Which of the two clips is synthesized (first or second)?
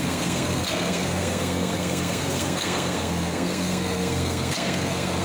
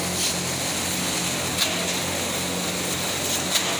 first